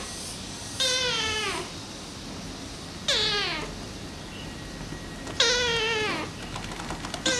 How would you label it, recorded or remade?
recorded